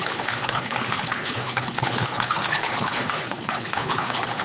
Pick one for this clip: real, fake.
fake